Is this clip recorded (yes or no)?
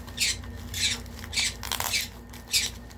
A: yes